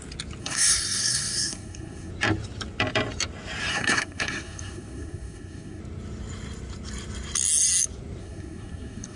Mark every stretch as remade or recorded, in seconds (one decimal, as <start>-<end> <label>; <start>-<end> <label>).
0.0-0.4 recorded; 0.4-2.1 remade; 2.1-3.7 recorded; 3.7-5.8 remade; 5.8-8.2 recorded; 8.2-9.2 remade